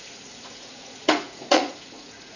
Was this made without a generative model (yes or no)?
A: no